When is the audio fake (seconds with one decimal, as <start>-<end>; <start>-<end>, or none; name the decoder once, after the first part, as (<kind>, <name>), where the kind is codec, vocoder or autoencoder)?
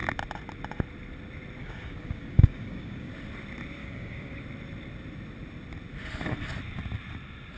1.6-3.1 (codec, DAC); 3.8-4.4